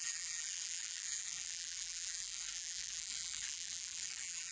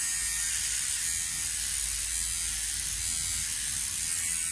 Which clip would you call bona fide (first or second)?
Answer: second